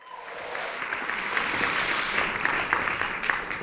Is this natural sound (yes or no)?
yes